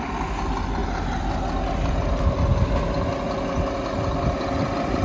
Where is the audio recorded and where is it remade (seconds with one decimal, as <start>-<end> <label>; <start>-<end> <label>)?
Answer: 0.0-5.0 recorded